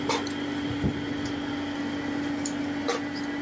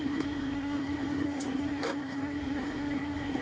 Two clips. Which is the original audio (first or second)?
first